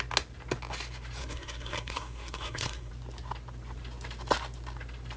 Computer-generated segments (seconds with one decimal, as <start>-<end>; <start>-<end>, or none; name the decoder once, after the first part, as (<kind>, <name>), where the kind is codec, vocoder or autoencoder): 1.2-2.9 (codec, SNAC)